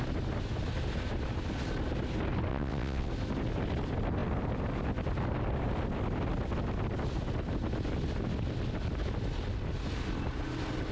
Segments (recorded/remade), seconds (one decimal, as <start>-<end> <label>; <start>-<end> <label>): 0.0-2.5 recorded; 2.5-3.1 remade; 3.1-10.9 recorded